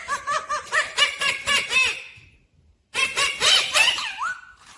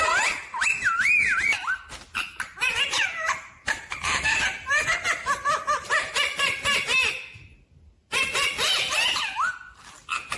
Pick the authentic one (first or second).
second